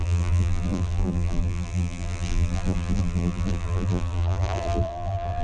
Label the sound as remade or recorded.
remade